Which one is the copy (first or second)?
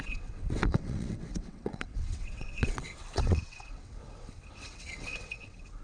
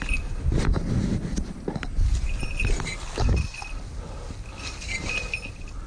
first